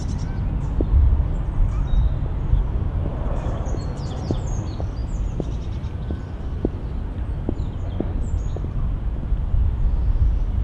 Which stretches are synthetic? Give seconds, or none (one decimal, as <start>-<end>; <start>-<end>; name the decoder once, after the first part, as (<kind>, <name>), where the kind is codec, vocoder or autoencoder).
3.1-4.0 (vocoder, BigVGAN v2)